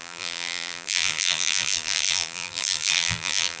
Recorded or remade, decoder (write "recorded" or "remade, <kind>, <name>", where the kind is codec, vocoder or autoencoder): remade, vocoder, BigVGAN v2